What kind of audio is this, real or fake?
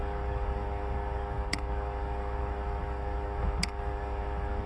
fake